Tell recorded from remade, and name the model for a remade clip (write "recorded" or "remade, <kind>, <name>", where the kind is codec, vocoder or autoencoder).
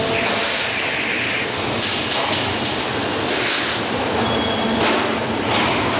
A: recorded